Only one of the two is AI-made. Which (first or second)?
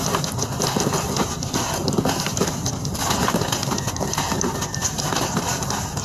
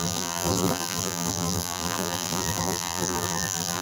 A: second